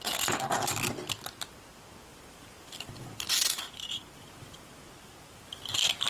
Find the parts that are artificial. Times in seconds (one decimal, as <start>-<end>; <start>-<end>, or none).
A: 2.1-6.1